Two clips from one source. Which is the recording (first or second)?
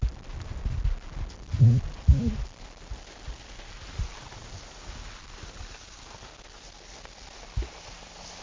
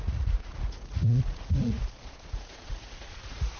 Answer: first